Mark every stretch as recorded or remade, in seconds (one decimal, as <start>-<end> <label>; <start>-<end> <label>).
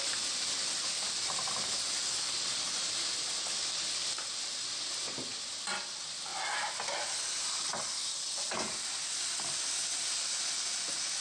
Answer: 0.0-11.2 recorded